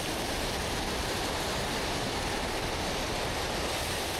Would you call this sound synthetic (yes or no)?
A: no